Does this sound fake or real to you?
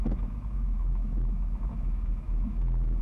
fake